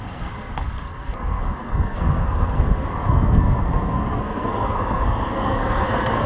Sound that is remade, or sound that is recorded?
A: remade